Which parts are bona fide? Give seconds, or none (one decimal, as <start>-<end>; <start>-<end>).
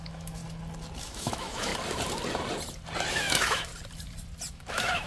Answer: 0.4-1.0; 1.7-3.1; 3.7-4.5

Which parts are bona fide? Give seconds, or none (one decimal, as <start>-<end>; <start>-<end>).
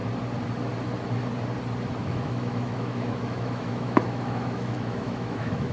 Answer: 0.0-2.0